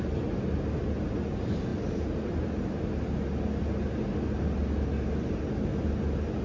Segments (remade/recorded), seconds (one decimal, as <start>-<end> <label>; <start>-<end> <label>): 0.0-6.4 recorded